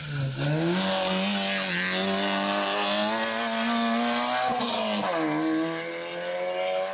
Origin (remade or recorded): recorded